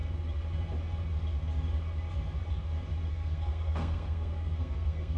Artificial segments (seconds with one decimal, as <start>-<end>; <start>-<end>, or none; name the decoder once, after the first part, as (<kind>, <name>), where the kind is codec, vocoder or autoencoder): 3.1-5.2 (codec, SNAC)